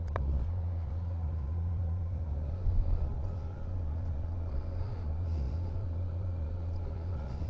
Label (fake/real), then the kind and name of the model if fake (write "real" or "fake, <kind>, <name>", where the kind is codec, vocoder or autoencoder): fake, vocoder, Vocos